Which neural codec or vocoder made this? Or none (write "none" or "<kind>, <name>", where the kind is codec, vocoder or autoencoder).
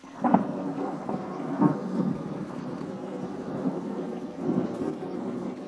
codec, SNAC